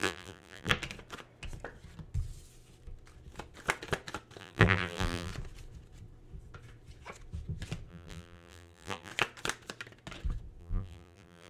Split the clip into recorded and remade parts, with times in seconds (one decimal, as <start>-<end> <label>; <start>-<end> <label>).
0.0-0.7 remade; 0.7-4.4 recorded; 4.4-5.3 remade; 5.3-7.9 recorded; 7.9-9.1 remade; 9.1-10.6 recorded; 10.6-11.5 remade

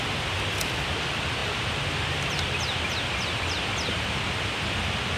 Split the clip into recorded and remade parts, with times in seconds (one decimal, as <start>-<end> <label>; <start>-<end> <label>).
0.0-5.2 recorded

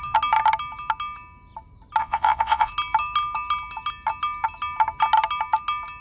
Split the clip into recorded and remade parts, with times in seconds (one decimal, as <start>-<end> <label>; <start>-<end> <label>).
0.0-2.0 recorded; 2.0-2.7 remade; 2.7-6.0 recorded

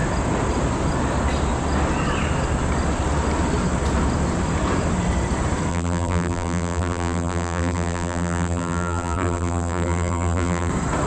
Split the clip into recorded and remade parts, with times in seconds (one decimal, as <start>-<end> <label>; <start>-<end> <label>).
0.0-5.7 recorded; 5.7-10.7 remade; 10.7-11.1 recorded

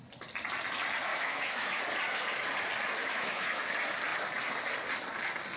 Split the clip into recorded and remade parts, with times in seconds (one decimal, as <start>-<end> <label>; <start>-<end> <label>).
0.0-1.1 recorded; 1.1-1.8 remade; 1.8-3.0 recorded; 3.0-3.6 remade; 3.6-5.6 recorded

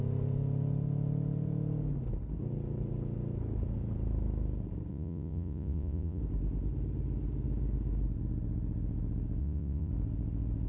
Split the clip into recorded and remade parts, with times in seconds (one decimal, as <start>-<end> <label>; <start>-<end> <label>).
0.0-4.9 recorded; 4.9-6.2 remade; 6.2-9.4 recorded; 9.4-9.9 remade; 9.9-10.7 recorded

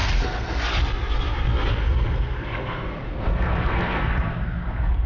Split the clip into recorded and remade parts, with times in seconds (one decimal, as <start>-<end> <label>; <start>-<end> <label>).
0.0-0.6 remade; 0.6-1.8 recorded; 1.8-5.1 remade